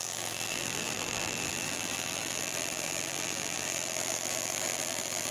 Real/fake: fake